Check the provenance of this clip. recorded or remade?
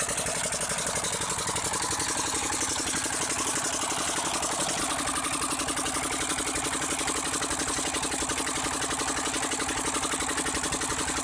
recorded